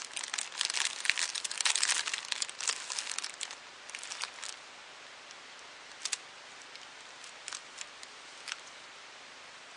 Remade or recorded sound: recorded